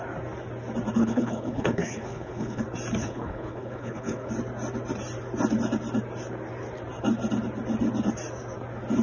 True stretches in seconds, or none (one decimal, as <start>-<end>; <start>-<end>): 0.0-1.0; 2.6-3.0; 4.3-9.0